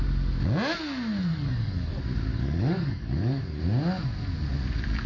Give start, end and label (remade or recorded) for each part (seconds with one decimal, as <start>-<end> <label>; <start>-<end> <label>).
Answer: 0.0-1.3 recorded; 1.3-1.9 remade; 1.9-2.3 recorded; 2.3-3.6 remade; 3.6-5.1 recorded